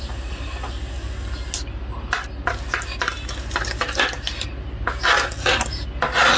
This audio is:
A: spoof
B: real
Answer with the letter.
B